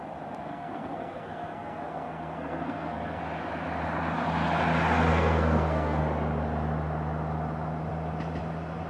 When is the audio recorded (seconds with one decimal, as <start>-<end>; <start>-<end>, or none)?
0.0-0.5; 3.2-5.1; 6.0-8.9